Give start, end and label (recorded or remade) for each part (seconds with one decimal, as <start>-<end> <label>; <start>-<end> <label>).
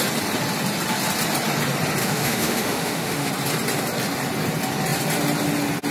0.0-2.0 recorded; 2.0-3.3 remade; 3.3-5.9 recorded